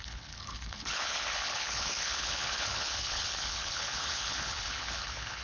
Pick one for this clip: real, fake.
fake